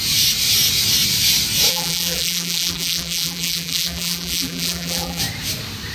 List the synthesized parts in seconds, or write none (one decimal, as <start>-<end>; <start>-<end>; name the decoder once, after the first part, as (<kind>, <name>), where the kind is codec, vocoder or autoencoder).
1.7-5.2 (vocoder, BigVGAN v2)